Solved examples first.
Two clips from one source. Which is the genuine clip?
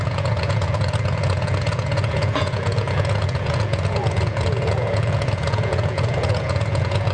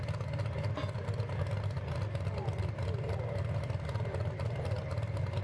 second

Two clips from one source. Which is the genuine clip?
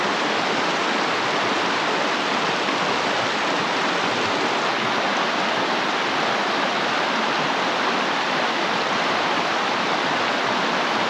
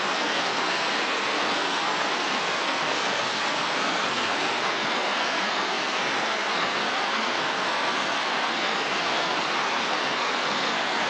first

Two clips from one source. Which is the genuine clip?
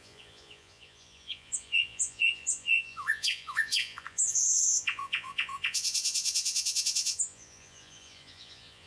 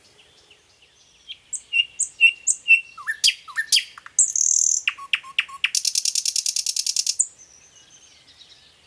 second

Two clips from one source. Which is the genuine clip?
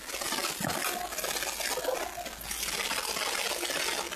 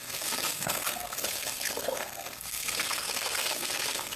first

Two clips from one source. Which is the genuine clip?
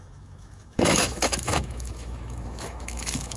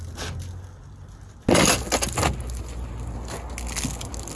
second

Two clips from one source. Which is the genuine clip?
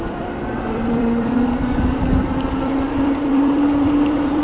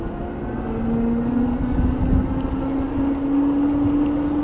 second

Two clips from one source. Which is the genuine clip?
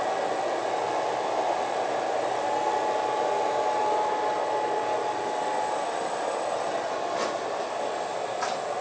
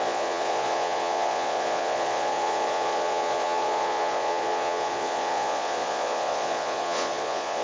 first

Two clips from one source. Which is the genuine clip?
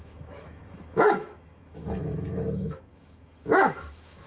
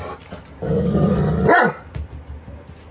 second